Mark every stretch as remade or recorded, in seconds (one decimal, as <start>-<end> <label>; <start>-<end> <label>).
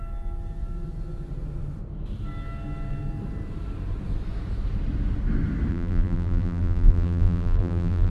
0.0-5.7 recorded; 5.7-8.1 remade